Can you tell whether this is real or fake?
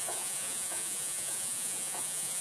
fake